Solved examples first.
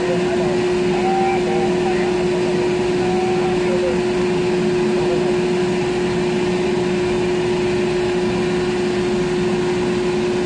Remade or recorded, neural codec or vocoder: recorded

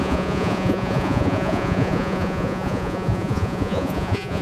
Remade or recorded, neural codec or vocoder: remade, vocoder, Vocos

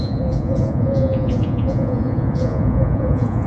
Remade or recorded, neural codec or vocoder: remade, vocoder, Vocos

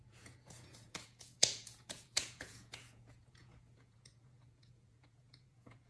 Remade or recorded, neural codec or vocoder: remade, vocoder, Vocos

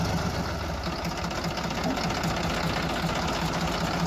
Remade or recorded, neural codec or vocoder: recorded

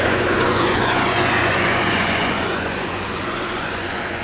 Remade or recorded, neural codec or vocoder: remade, vocoder, Vocos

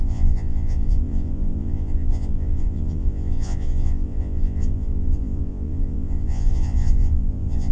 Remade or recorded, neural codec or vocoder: remade, vocoder, Vocos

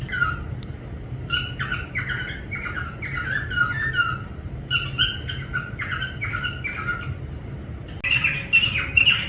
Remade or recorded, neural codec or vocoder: recorded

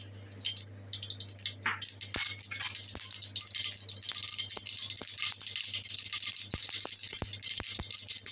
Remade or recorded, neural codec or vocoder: recorded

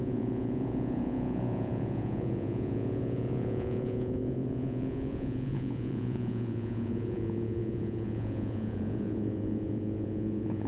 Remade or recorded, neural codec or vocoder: remade, vocoder, Vocos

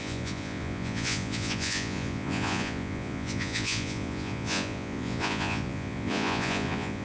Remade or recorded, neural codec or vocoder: remade, vocoder, Vocos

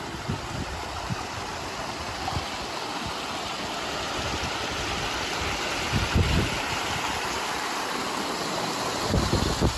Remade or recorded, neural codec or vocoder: recorded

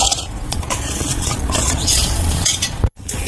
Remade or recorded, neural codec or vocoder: remade, vocoder, Vocos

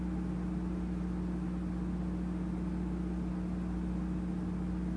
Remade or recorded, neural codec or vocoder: recorded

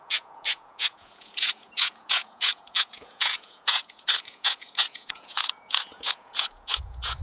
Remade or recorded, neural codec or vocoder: remade, vocoder, Vocos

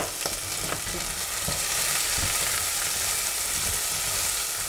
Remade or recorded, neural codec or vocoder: recorded